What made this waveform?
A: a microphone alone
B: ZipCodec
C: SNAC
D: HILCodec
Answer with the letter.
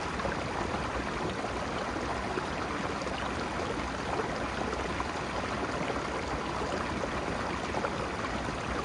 A